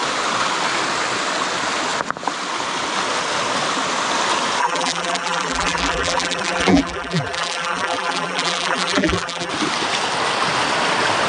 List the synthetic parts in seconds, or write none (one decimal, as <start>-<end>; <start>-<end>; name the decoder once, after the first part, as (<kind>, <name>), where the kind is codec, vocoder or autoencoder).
4.6-9.5 (vocoder, BigVGAN v2)